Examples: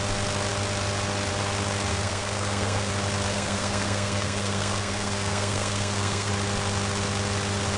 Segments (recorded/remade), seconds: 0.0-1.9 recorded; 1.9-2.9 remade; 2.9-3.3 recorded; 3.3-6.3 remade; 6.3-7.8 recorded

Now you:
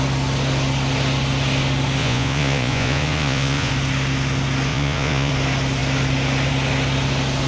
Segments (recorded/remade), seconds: 0.0-2.0 recorded; 2.0-3.7 remade; 3.7-4.7 recorded; 4.7-5.3 remade; 5.3-7.5 recorded

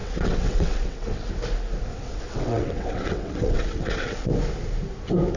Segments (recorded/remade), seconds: 0.0-1.3 remade; 1.3-1.9 recorded; 1.9-4.3 remade; 4.3-5.4 recorded

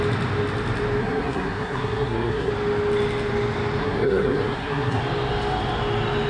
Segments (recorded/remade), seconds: 0.0-1.0 recorded; 1.0-2.5 remade; 2.5-3.8 recorded; 3.8-5.0 remade; 5.0-6.3 recorded

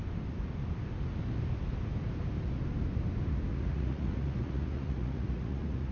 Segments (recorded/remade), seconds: 0.0-3.5 recorded; 3.5-5.9 remade

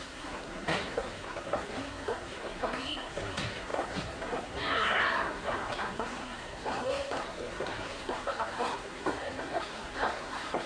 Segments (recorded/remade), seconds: 0.0-10.7 remade

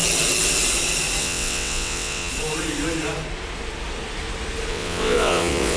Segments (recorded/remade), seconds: 0.0-1.2 recorded; 1.2-2.3 remade; 2.3-4.7 recorded; 4.7-5.8 remade

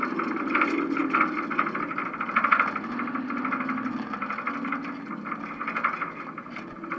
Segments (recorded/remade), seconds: 0.0-7.0 recorded